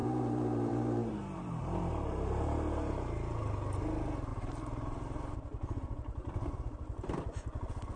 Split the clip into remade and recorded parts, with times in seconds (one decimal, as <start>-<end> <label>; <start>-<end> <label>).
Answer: 0.0-2.9 remade; 2.9-4.3 recorded; 4.3-7.2 remade; 7.2-8.0 recorded